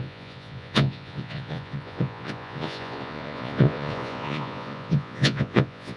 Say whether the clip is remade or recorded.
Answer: remade